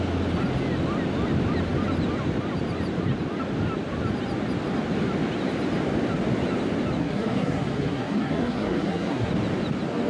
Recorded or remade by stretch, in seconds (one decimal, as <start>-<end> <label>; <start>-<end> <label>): 0.0-7.0 recorded; 7.0-9.3 remade; 9.3-10.1 recorded